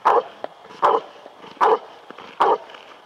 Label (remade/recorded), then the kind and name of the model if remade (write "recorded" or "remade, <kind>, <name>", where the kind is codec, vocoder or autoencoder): recorded